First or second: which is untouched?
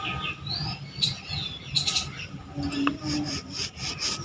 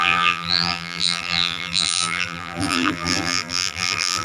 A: first